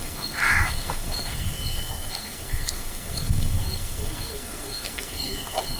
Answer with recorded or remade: remade